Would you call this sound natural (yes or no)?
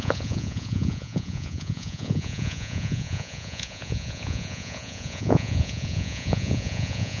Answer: no